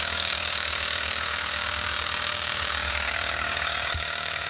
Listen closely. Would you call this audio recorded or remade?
remade